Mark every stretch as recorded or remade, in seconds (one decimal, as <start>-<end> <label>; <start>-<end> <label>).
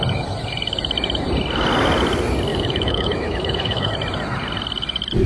0.0-2.5 recorded; 2.5-3.9 remade; 3.9-5.3 recorded